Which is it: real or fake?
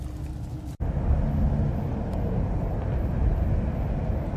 real